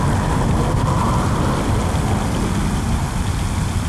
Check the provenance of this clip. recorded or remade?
recorded